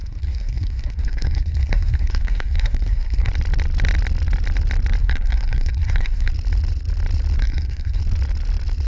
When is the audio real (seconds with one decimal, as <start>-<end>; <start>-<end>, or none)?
3.3-5.0; 6.3-7.4; 8.0-8.9